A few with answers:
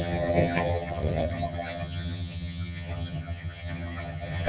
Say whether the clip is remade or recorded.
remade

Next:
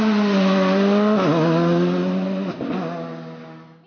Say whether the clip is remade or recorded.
recorded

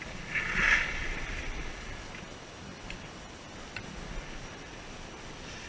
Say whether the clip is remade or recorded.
recorded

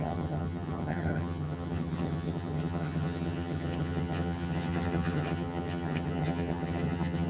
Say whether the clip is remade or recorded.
remade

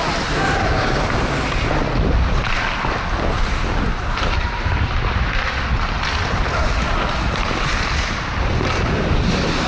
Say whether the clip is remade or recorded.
recorded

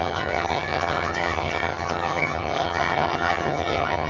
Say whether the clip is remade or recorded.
remade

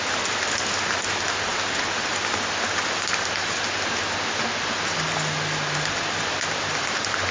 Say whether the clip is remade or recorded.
recorded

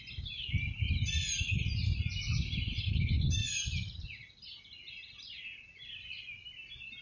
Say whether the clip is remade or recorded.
recorded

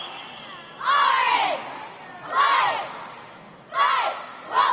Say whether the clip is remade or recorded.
recorded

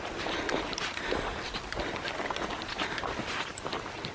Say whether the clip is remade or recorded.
recorded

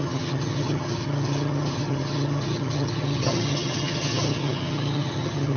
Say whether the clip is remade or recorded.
remade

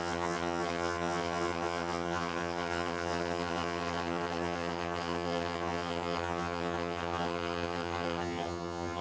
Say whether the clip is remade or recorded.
remade